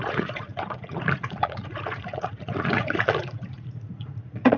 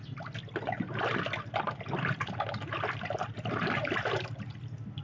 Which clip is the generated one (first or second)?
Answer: first